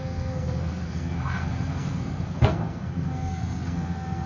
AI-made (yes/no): yes